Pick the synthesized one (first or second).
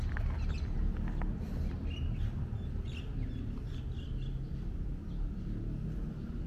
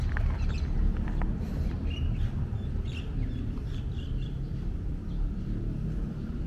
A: second